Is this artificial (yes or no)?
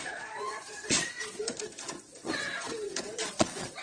yes